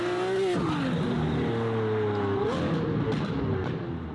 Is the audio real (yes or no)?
yes